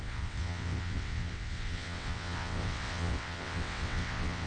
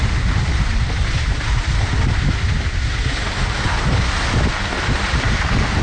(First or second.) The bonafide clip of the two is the second